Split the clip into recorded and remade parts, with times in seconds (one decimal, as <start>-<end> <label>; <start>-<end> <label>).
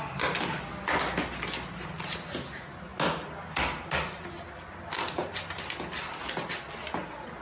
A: 0.0-7.4 recorded